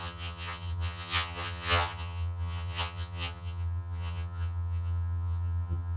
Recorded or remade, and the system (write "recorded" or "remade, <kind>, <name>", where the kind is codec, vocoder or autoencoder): remade, vocoder, HiFi-GAN